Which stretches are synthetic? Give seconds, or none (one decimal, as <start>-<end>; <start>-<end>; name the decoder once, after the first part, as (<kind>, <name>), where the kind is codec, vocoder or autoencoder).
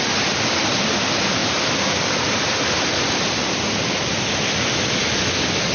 none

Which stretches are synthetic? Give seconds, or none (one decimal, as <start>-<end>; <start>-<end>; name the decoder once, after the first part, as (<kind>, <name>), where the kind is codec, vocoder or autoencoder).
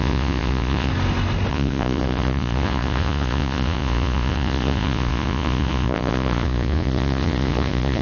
0.0-0.9 (vocoder, Vocos); 1.5-8.0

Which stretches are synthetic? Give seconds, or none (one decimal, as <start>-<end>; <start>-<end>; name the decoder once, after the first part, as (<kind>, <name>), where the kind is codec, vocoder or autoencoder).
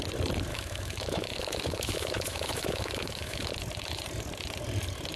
0.5-3.5 (autoencoder, DAC-VAE)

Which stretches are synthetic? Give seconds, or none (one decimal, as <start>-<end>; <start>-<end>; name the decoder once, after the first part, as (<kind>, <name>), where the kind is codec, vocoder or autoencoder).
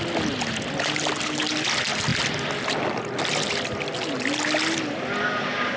none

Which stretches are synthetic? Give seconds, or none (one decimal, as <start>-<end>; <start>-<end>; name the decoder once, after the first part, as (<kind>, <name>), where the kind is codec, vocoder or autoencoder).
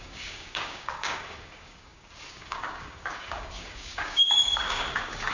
0.0-5.3 (codec, DAC)